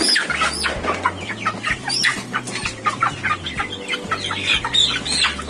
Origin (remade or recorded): recorded